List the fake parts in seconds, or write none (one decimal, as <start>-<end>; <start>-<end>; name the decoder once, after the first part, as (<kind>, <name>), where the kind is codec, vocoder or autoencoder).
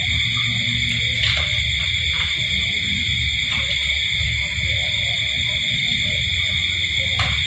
none